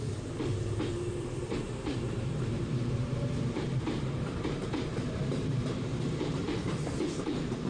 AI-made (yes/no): yes